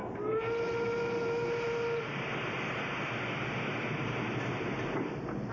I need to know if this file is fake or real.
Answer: real